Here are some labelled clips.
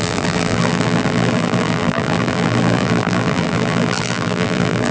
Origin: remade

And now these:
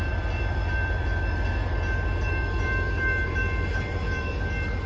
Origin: remade